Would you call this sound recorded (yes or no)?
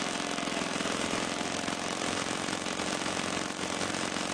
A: no